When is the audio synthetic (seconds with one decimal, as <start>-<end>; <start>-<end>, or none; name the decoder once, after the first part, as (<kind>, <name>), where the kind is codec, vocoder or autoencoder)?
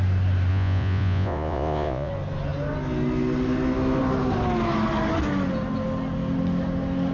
0.5-2.1 (vocoder, Vocos)